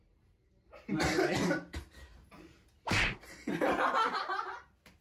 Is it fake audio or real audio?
fake